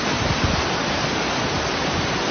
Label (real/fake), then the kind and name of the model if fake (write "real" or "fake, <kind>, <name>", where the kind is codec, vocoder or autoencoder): real